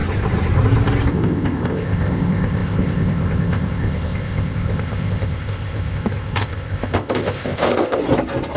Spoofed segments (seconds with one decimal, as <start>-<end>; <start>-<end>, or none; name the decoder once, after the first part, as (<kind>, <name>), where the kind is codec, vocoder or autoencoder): 1.1-8.0 (codec, ZipCodec)